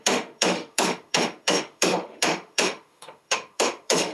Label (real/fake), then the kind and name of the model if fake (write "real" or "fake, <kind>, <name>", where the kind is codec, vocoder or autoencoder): fake, autoencoder, DAC-VAE